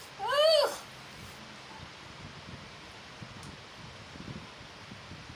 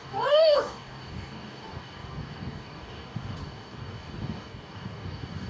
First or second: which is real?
first